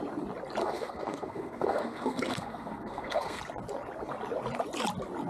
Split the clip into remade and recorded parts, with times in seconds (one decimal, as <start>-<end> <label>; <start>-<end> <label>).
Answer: 0.0-0.6 recorded; 0.6-3.4 remade; 3.4-5.3 recorded